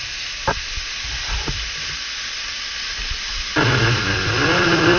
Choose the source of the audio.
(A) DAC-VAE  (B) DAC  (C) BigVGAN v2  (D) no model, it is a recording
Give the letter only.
D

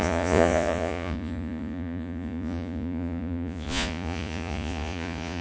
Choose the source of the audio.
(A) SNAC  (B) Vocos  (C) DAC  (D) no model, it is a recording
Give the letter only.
B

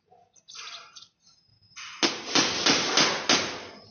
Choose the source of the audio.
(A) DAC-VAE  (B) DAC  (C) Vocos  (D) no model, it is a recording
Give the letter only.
D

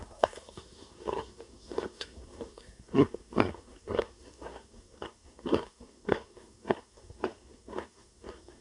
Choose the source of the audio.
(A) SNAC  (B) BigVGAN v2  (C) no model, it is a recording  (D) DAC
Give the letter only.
A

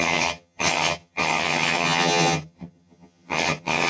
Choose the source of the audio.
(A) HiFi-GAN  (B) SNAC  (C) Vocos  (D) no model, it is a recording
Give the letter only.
A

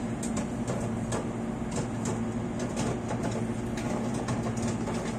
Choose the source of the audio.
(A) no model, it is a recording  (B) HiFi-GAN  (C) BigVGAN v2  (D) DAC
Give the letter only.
A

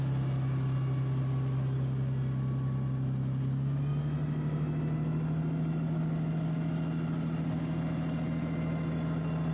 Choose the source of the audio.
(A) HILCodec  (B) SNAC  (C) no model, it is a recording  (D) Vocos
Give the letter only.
C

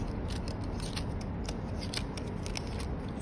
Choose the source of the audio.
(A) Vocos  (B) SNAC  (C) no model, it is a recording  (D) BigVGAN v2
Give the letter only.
C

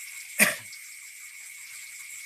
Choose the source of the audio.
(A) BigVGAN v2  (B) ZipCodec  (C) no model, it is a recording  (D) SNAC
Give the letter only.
C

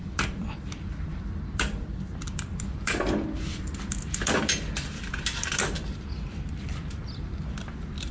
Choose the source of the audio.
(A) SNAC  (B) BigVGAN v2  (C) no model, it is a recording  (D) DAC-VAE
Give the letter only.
B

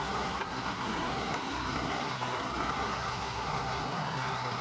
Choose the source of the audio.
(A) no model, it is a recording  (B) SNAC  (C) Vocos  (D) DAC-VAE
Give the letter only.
B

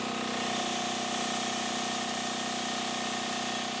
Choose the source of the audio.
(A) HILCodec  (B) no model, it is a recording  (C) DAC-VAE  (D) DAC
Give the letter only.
B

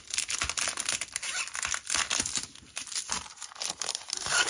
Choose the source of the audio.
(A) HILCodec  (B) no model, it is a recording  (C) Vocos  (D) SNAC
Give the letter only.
B